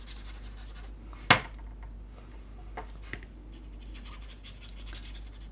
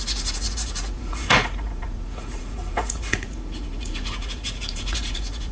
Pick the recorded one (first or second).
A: first